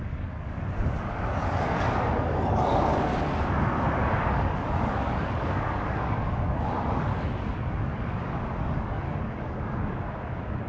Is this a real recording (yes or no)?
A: no